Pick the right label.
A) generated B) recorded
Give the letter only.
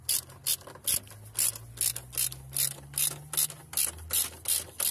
B